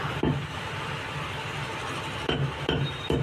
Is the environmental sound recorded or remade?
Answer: recorded